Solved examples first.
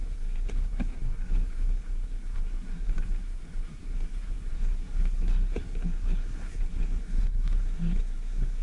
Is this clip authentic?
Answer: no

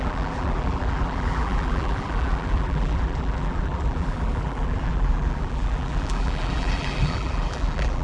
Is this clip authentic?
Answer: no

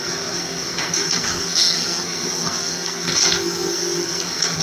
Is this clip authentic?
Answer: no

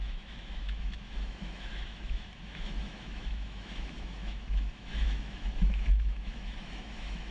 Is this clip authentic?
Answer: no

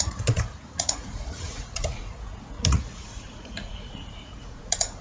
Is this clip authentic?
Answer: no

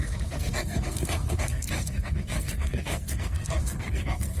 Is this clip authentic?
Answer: no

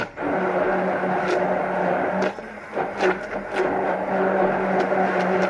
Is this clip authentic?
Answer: yes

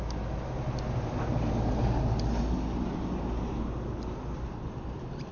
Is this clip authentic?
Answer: yes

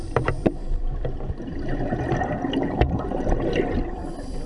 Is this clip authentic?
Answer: no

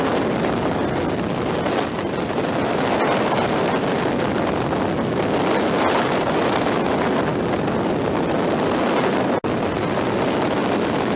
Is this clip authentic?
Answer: yes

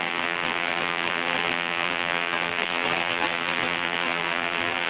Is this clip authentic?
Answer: no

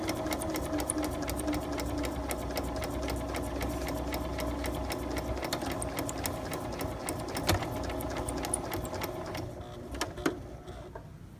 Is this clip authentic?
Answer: yes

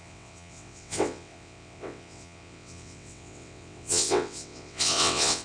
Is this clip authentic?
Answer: no